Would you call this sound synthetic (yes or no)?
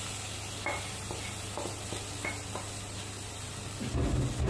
no